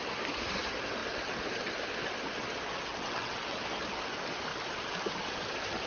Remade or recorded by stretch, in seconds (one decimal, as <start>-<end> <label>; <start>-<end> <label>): 0.0-2.9 recorded; 2.9-3.6 remade; 3.6-5.9 recorded